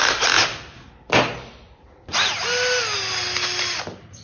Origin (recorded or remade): recorded